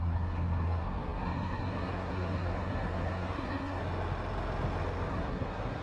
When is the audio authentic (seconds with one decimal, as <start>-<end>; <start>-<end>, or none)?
3.8-5.1